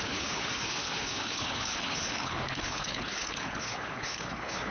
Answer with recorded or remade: remade